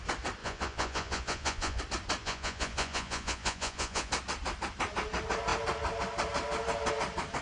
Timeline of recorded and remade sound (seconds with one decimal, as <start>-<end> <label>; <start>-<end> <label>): 0.0-0.4 recorded; 0.4-1.8 remade; 1.8-2.2 recorded; 2.2-4.1 remade; 4.1-7.4 recorded